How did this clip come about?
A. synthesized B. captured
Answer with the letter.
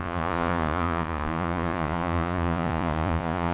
A